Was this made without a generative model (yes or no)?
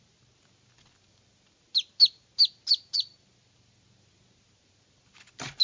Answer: yes